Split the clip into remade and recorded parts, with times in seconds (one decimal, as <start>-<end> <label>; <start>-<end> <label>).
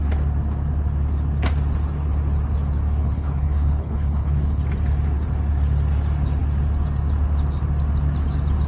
0.0-3.0 recorded; 3.0-4.6 remade; 4.6-8.7 recorded